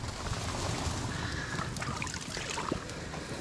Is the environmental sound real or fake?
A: real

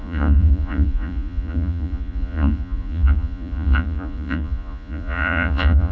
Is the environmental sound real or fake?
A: fake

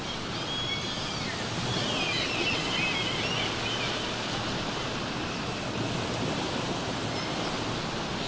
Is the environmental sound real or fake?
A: real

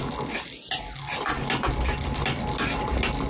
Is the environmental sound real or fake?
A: real